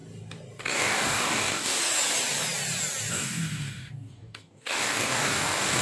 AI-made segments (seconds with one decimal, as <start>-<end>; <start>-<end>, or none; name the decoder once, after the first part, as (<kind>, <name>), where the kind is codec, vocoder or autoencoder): 0.6-1.8 (codec, DAC); 3.1-5.8